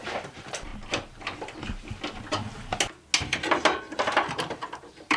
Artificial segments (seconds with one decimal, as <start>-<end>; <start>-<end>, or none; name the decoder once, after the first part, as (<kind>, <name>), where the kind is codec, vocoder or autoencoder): 0.0-0.7 (vocoder, BigVGAN v2); 3.8-5.2